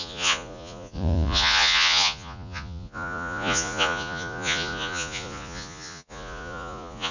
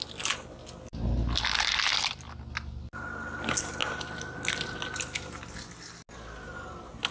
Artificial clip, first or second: first